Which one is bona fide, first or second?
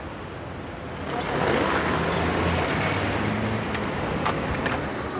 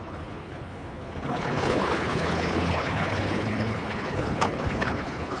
first